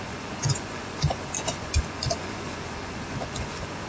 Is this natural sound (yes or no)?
no